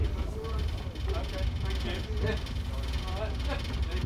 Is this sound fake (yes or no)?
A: no